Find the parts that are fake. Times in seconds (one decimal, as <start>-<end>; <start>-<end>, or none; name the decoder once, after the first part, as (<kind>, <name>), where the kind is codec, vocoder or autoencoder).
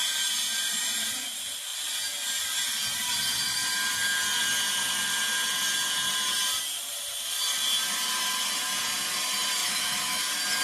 9.6-10.2 (autoencoder, DAC-VAE)